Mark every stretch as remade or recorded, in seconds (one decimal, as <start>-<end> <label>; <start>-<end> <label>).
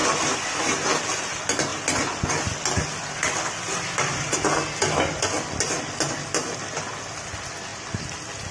0.0-8.5 recorded